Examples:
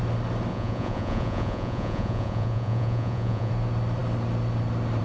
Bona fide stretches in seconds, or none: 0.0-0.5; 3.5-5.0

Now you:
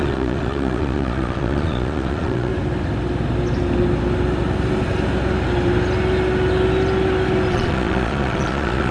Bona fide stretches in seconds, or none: 2.5-7.5

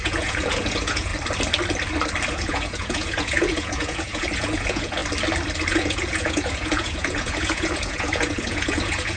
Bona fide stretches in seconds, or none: 1.1-2.3; 5.0-5.7